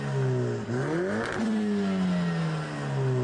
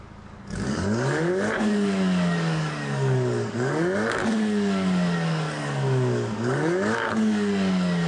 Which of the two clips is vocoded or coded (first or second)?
second